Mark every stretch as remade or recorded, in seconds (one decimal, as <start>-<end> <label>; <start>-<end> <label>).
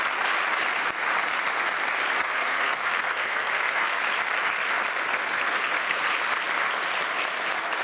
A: 0.0-2.2 recorded; 2.2-4.0 remade; 4.0-5.1 recorded; 5.1-6.0 remade; 6.0-7.8 recorded